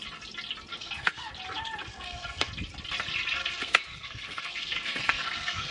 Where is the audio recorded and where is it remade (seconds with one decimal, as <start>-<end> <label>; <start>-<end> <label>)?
0.0-0.7 recorded; 0.7-1.3 remade; 1.3-1.9 recorded; 1.9-2.5 remade; 2.5-3.4 recorded; 3.4-5.7 remade